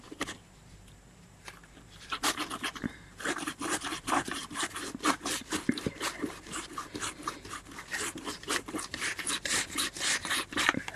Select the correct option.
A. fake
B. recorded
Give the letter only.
A